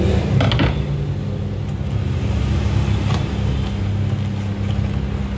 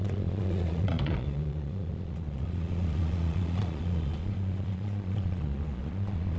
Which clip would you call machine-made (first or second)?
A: second